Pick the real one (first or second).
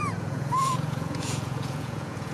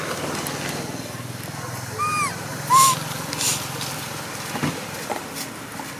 second